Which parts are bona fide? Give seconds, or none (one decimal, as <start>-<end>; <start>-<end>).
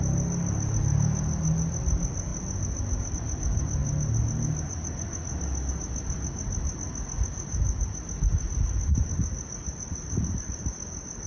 0.0-11.3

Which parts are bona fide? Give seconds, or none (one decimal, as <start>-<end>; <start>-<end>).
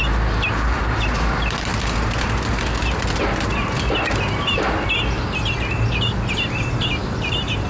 0.0-7.7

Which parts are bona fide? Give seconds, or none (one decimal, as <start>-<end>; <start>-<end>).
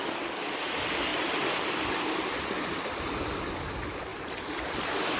0.0-5.2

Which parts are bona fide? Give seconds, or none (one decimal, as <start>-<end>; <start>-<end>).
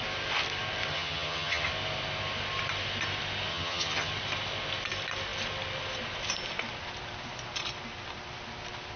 0.0-0.9; 1.7-3.5; 4.1-9.0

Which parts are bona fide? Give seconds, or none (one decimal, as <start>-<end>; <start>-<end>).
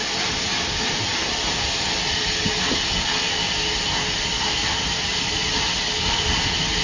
0.0-6.8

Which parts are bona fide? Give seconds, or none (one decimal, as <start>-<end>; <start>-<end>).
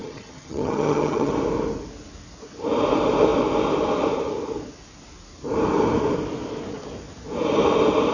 1.3-8.1